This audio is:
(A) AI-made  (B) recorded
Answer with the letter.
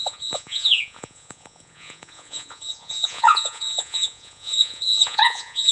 A